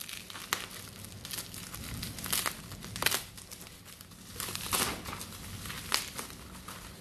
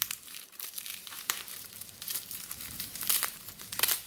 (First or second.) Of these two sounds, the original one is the first